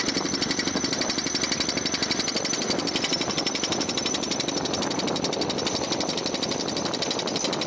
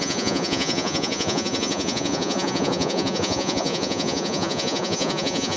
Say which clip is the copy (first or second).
second